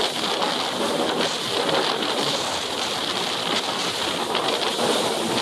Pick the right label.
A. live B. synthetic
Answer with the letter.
A